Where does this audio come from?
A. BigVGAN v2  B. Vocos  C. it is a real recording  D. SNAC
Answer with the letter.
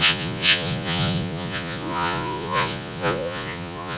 B